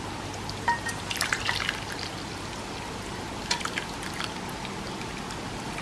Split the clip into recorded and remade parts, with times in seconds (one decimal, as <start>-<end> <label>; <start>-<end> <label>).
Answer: 0.0-0.7 recorded; 0.7-1.4 remade; 1.4-5.8 recorded